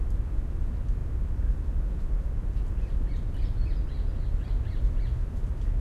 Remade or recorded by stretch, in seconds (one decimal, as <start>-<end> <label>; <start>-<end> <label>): 0.0-5.8 recorded